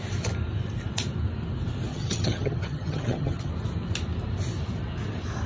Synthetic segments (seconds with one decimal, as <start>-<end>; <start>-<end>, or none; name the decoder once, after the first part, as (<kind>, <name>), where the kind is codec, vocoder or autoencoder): 1.9-3.5 (vocoder, HiFi-GAN)

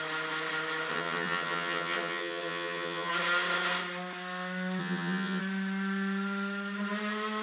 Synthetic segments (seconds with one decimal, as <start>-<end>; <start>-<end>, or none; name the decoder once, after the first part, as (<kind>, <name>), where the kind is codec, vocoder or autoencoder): 0.9-3.1 (vocoder, HiFi-GAN); 4.8-5.4